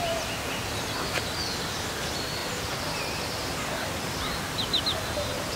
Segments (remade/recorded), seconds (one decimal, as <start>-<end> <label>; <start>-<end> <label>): 0.0-5.6 recorded